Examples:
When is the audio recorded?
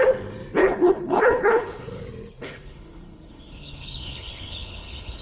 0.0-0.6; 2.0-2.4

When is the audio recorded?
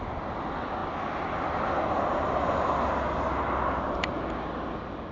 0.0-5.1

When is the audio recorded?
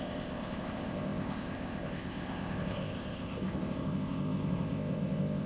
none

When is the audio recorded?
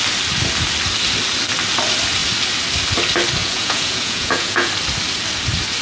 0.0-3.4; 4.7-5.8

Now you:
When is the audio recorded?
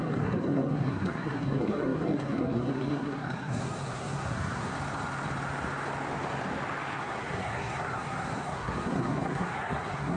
4.7-7.0